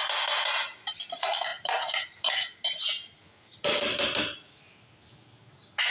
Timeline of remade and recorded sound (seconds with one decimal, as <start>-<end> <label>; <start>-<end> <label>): 0.0-5.9 recorded